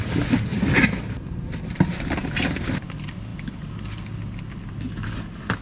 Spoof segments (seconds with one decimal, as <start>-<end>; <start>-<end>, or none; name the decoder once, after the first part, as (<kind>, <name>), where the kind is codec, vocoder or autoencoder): none